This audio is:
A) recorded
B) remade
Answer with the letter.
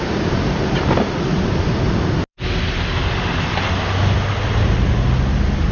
A